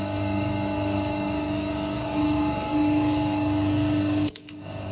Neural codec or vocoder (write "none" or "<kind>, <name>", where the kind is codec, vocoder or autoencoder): codec, DAC